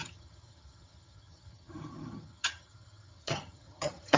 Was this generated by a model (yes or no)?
yes